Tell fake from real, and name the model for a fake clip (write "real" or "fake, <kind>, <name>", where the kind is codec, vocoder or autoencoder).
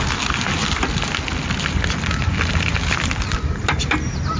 real